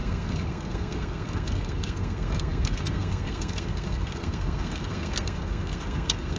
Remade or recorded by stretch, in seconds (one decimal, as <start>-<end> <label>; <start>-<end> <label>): 0.0-6.4 remade